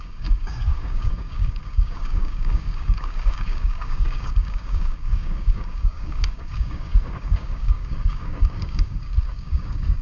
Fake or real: fake